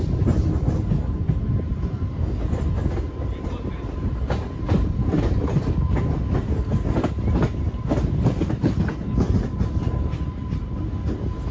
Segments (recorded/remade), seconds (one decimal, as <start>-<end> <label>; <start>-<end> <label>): 0.0-11.5 recorded